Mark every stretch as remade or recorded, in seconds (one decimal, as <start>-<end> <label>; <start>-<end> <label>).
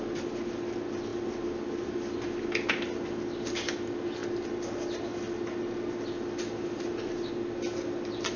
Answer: 0.0-8.4 recorded